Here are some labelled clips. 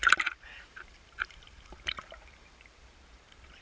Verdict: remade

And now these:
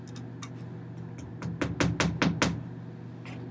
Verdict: recorded